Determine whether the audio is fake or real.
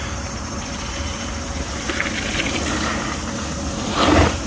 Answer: real